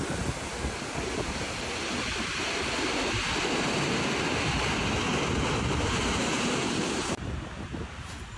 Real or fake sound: real